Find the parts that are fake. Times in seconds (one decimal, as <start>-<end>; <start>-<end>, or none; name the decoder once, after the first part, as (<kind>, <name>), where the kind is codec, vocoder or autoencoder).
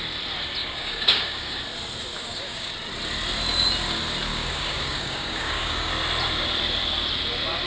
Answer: 0.6-1.6 (codec, DAC); 2.2-2.7; 4.3-5.9